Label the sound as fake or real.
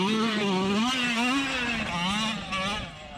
real